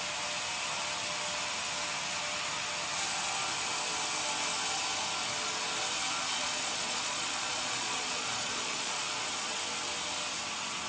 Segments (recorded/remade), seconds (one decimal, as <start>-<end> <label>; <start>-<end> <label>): 0.0-6.3 recorded; 6.3-9.6 remade; 9.6-10.9 recorded